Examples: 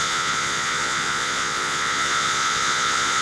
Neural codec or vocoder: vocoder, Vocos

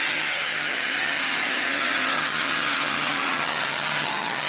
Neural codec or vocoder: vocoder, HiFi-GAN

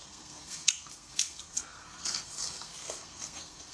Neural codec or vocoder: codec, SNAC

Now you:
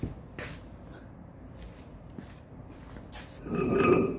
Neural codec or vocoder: none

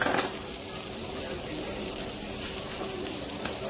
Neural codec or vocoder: none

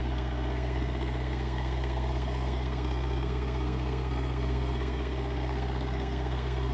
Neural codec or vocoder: codec, SNAC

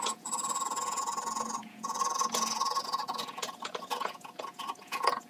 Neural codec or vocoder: vocoder, Vocos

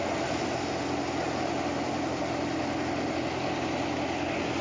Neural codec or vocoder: none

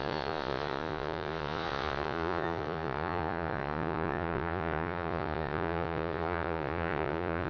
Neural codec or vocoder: vocoder, Vocos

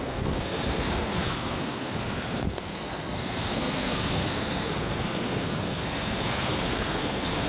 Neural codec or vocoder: codec, SNAC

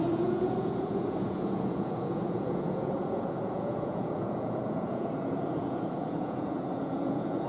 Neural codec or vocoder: vocoder, Vocos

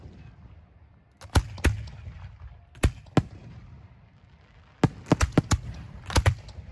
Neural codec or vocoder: none